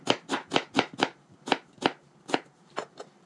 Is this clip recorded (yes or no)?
yes